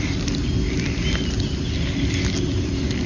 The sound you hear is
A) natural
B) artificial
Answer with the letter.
A